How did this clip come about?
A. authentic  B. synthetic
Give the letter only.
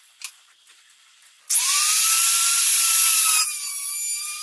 B